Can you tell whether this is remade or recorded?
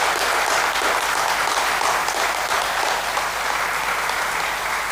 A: recorded